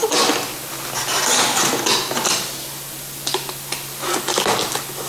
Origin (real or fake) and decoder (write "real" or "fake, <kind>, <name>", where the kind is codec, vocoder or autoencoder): real